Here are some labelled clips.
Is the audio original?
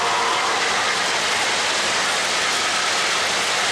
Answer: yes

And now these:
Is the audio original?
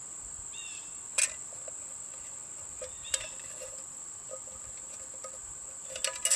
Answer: yes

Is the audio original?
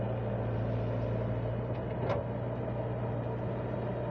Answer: yes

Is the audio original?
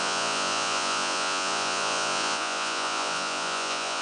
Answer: no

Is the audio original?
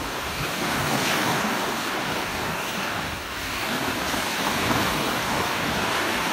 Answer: no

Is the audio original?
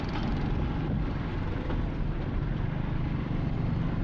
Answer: yes